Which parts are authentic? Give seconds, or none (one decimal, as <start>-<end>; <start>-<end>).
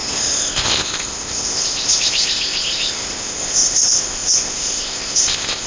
none